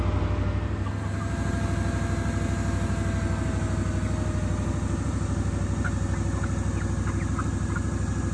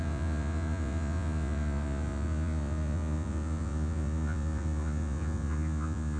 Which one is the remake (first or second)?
second